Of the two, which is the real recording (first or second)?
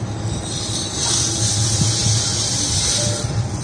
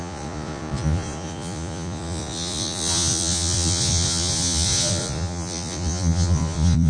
first